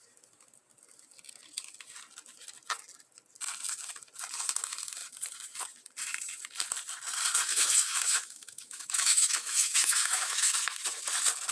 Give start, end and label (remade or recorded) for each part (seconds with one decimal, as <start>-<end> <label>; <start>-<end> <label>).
0.0-7.5 recorded; 7.5-10.5 remade; 10.5-11.5 recorded